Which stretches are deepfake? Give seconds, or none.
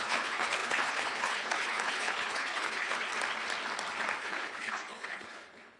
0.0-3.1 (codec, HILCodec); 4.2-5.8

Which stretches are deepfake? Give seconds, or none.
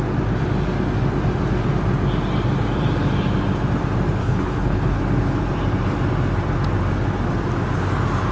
4.2-5.0 (codec, HILCodec)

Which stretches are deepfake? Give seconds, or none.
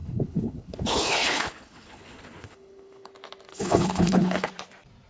0.0-3.1 (codec, HILCodec); 3.5-4.5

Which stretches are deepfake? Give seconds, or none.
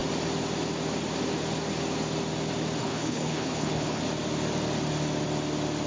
2.8-4.0 (codec, HILCodec)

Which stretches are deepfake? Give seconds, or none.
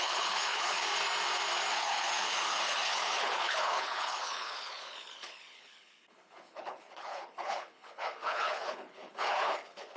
0.0-0.9 (codec, HILCodec); 1.7-10.0